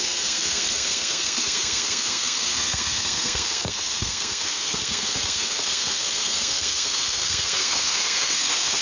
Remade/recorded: remade